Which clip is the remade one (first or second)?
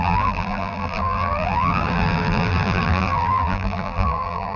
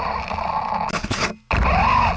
first